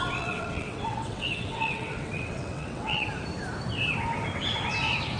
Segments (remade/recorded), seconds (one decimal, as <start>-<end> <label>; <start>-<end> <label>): 0.0-3.1 remade; 3.1-5.2 recorded